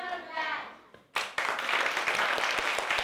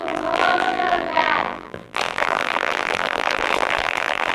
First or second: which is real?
first